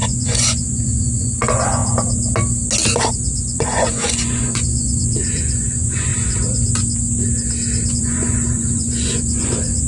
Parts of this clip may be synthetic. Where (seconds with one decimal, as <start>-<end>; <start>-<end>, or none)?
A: 0.0-1.8; 3.1-6.1; 7.9-9.9